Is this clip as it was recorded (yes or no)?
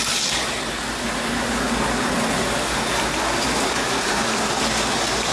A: yes